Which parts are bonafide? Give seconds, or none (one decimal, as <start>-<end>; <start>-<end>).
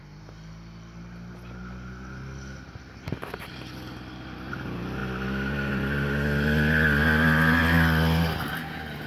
0.0-9.1